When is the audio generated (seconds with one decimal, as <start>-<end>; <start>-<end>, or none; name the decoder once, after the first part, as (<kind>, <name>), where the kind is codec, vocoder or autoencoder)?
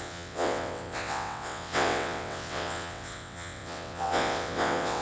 0.0-5.0 (vocoder, WaveNeXt)